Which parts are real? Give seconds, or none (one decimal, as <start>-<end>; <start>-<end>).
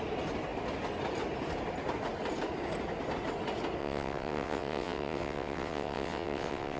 0.0-3.8